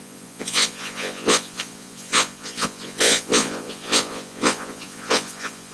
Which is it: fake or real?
fake